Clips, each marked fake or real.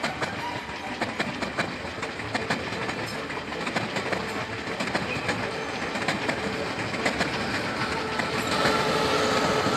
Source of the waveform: real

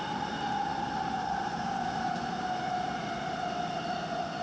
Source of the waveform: real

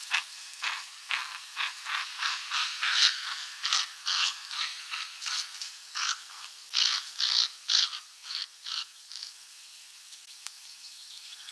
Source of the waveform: fake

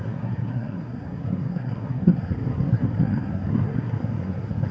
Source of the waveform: fake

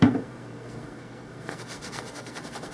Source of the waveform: fake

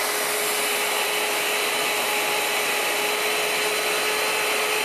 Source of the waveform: real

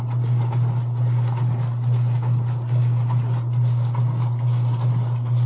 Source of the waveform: real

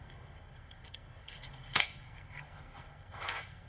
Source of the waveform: fake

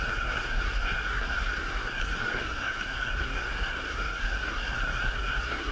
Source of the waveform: fake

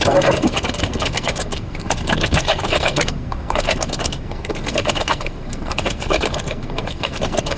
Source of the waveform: fake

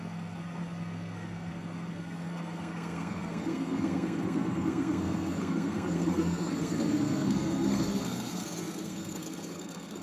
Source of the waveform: fake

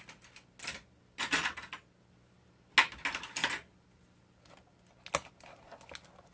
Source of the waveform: real